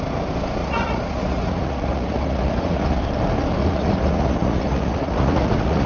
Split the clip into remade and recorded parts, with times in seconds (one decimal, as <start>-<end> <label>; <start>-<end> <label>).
0.0-0.6 recorded; 0.6-3.0 remade; 3.0-3.6 recorded; 3.6-5.9 remade